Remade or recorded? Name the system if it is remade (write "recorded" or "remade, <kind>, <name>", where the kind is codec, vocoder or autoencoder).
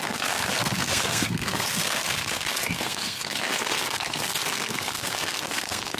remade, codec, SNAC